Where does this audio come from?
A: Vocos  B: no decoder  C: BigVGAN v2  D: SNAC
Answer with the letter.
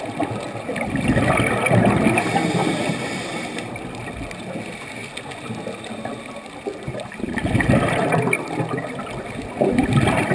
B